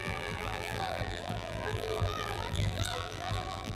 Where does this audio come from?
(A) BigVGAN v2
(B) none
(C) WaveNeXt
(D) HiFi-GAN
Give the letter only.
A